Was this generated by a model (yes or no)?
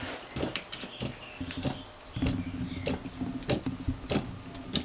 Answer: no